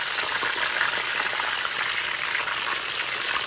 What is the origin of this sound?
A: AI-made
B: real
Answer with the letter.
B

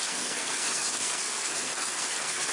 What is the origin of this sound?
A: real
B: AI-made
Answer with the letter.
B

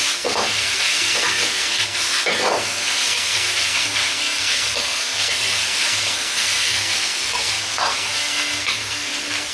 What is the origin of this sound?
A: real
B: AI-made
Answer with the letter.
B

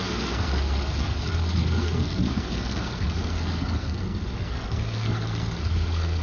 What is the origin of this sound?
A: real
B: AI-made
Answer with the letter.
B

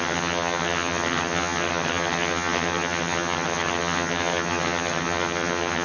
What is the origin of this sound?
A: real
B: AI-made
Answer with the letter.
B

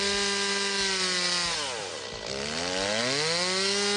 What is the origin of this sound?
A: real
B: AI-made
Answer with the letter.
A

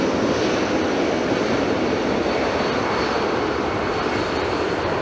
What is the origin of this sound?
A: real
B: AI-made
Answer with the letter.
A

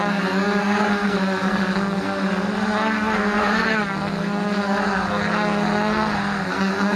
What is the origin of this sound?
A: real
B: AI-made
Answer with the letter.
B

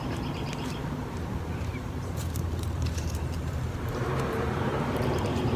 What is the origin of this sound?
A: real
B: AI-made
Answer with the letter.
B